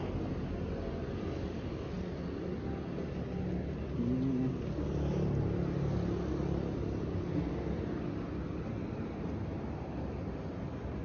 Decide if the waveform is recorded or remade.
recorded